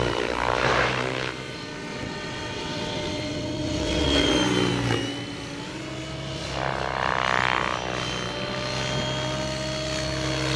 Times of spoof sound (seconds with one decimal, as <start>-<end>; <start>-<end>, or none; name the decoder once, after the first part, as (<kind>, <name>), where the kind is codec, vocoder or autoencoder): 1.9-4.3 (vocoder, WaveNeXt)

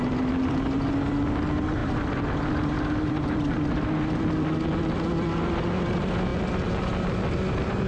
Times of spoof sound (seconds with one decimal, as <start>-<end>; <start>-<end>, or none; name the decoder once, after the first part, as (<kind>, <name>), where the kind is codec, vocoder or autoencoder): none

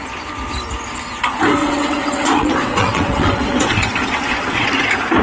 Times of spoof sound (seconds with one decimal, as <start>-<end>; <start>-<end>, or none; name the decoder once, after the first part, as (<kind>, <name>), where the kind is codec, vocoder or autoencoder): 1.6-4.7 (vocoder, WaveNeXt)

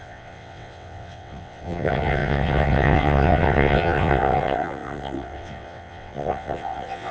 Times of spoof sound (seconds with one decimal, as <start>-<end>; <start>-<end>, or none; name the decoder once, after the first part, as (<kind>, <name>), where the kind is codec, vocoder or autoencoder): 0.0-7.1 (vocoder, WaveNeXt)